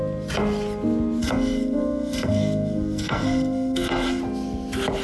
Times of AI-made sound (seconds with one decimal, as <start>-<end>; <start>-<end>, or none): 1.2-4.2

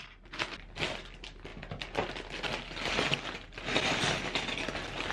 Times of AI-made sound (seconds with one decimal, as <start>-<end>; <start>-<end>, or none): none